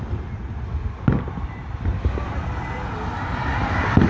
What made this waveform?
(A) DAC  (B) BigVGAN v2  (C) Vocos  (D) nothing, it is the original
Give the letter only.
D